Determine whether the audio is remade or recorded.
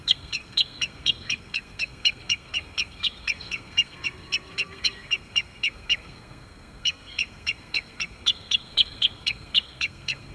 remade